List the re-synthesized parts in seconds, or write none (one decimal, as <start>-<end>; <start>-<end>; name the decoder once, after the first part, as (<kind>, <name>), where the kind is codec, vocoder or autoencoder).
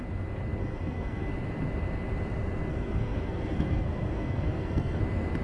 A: 0.6-1.3 (codec, SNAC); 2.7-5.0